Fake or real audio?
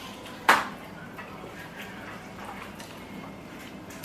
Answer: fake